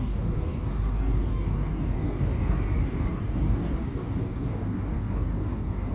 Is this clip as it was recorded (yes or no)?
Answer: no